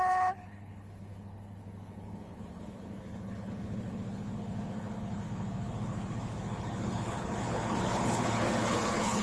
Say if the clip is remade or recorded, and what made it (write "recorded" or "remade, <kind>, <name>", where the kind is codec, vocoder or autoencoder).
remade, codec, HILCodec